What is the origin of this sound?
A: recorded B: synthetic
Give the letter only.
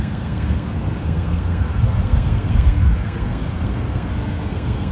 B